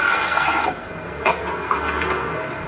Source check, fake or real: fake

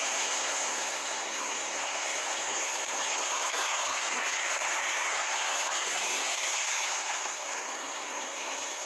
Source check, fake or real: fake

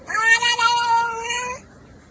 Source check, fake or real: real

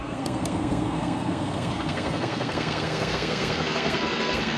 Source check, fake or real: fake